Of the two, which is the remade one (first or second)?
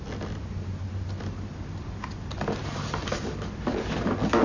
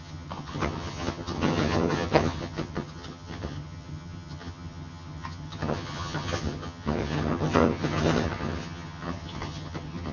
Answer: second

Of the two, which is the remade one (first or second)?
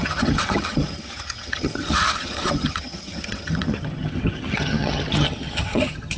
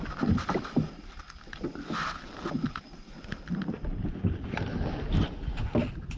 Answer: first